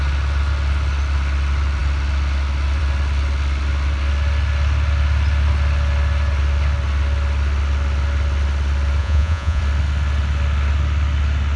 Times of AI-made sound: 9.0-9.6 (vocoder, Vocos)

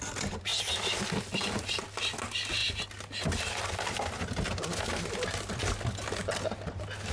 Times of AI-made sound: none